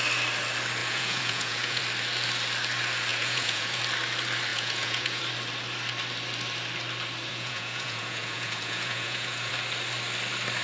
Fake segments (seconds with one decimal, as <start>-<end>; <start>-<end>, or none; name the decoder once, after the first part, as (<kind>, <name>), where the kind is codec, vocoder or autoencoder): 0.8-1.8 (vocoder, Vocos); 3.1-3.8; 4.5-5.2; 7.3-9.5